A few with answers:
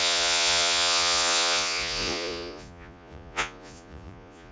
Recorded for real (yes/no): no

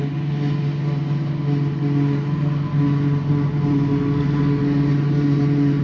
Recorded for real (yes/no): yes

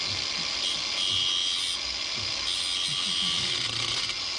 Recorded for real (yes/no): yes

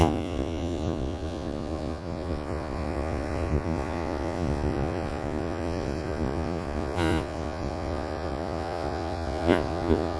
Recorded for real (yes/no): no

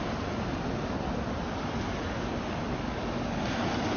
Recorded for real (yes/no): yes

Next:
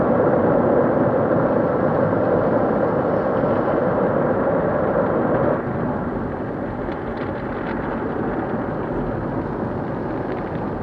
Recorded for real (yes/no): yes